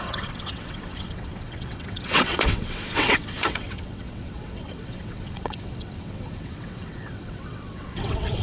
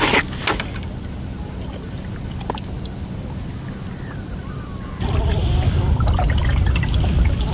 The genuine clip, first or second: second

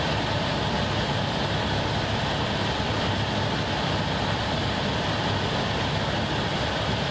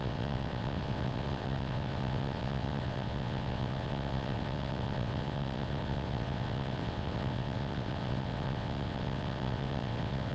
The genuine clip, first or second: first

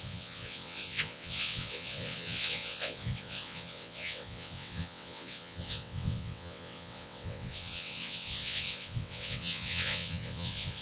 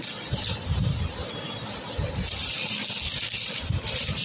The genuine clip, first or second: second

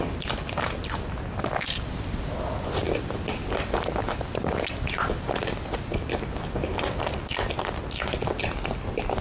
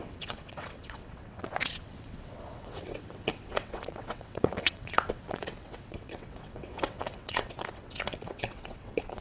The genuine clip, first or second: first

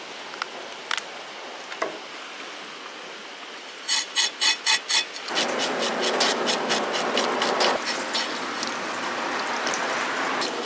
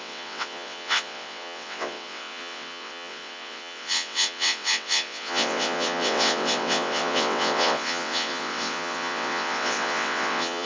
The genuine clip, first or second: first